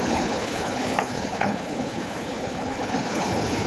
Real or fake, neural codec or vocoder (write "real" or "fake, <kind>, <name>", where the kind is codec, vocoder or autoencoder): fake, codec, HILCodec